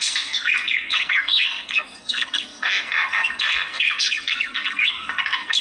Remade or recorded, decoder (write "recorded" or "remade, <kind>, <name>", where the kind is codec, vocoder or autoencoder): remade, codec, SNAC